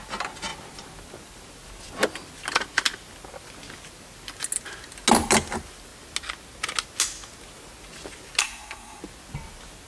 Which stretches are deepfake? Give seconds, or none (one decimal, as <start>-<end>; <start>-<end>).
8.4-9.0